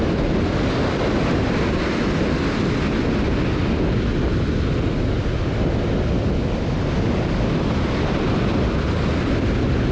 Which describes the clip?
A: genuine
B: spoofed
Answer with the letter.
A